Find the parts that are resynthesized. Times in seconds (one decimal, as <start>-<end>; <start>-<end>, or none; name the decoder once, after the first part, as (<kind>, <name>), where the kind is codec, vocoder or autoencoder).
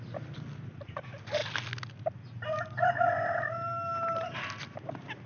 none